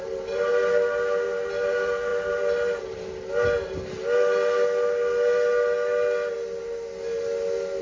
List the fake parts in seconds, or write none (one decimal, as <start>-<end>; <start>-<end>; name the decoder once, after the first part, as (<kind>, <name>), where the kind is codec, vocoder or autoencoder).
none